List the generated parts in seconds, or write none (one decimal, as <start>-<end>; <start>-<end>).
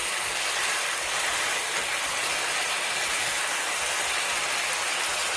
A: none